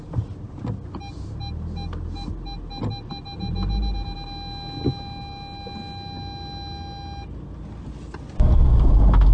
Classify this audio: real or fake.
real